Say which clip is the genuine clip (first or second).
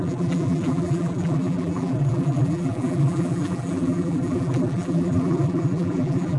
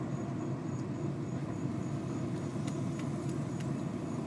second